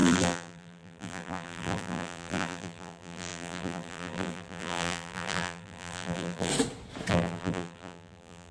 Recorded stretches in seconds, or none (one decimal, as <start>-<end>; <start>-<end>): 6.5-7.1